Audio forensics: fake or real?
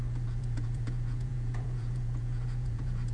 fake